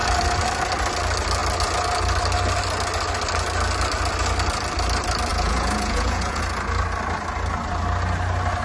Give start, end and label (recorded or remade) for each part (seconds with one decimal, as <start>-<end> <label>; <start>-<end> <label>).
0.0-5.3 recorded; 5.3-6.4 remade; 6.4-8.6 recorded

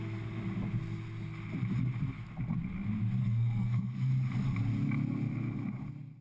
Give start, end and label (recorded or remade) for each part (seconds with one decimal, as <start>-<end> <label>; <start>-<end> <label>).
0.0-3.2 recorded; 3.2-4.1 remade; 4.1-6.2 recorded

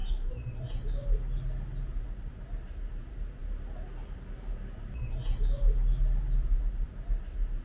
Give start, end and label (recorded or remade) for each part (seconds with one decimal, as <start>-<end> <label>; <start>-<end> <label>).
0.0-7.6 recorded

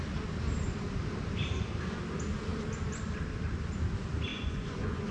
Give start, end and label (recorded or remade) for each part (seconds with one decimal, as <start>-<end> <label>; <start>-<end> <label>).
0.0-4.3 recorded; 4.3-5.1 remade

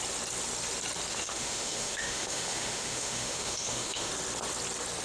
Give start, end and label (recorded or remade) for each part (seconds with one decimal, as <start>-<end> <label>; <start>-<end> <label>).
0.0-1.1 recorded; 1.1-4.1 remade; 4.1-5.0 recorded

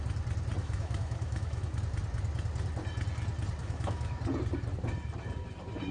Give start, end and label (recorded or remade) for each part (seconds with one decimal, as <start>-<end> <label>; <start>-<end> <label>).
0.0-0.6 recorded; 0.6-1.8 remade; 1.8-3.6 recorded; 3.6-4.2 remade; 4.2-5.9 recorded

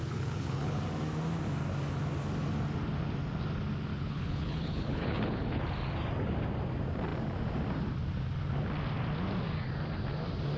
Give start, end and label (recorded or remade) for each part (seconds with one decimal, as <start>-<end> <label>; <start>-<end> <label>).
0.0-0.8 remade; 0.8-3.9 recorded; 3.9-5.6 remade; 5.6-10.6 recorded